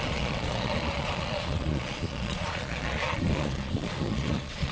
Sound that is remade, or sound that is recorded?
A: remade